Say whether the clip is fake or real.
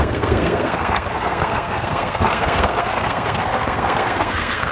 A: fake